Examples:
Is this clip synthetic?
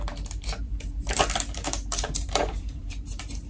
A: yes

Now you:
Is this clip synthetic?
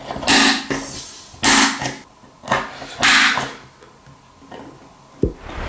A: no